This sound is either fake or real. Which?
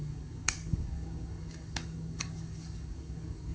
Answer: fake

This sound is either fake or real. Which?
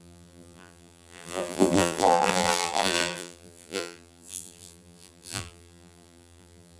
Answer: fake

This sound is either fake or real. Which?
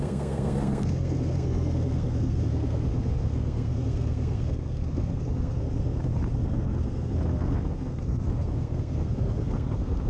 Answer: fake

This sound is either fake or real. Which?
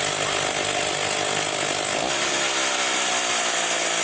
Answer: real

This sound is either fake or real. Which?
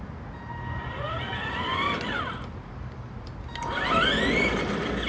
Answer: real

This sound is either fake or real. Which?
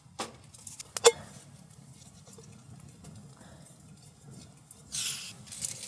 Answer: real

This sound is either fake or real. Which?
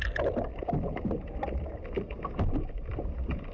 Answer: real